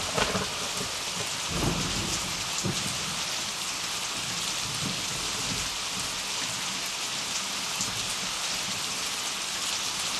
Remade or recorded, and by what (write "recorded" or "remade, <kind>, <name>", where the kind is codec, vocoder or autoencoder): recorded